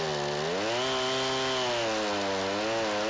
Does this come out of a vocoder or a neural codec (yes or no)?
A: no